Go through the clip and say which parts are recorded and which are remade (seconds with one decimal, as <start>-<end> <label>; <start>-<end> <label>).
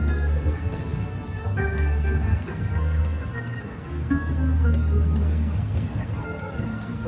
0.0-7.1 remade